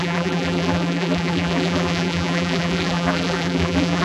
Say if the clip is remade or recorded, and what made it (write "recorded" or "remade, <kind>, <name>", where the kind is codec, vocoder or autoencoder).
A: remade, vocoder, BigVGAN v2